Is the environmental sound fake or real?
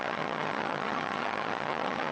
fake